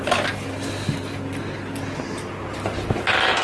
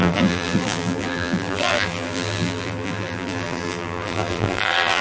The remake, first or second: second